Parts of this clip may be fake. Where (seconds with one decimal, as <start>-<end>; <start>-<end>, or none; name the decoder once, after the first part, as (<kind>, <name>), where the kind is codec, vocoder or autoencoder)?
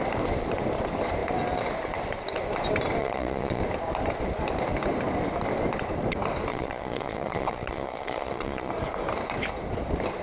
3.0-3.6 (vocoder, Vocos); 6.5-8.7